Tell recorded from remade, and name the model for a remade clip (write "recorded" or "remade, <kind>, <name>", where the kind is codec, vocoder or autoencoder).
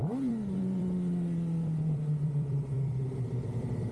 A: remade, vocoder, BigVGAN v2